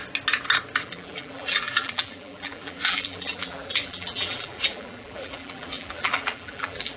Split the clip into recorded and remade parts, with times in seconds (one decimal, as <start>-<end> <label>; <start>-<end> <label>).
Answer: 0.0-0.8 recorded; 0.8-7.0 remade